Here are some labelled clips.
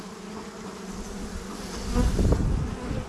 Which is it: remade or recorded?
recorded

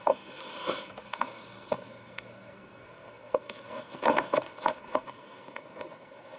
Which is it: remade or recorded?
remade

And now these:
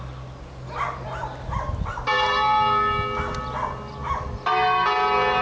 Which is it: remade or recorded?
recorded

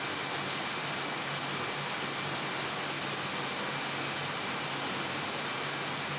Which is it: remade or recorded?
recorded